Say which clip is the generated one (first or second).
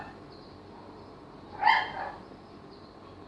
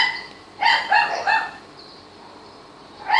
second